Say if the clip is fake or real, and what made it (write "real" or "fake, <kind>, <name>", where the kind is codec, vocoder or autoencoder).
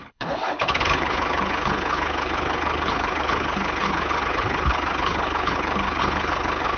fake, codec, HILCodec